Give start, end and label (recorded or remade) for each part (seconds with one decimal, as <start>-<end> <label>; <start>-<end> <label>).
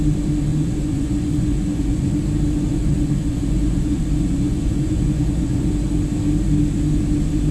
0.0-0.5 recorded; 0.5-2.1 remade; 2.1-2.7 recorded; 2.7-5.7 remade; 5.7-7.5 recorded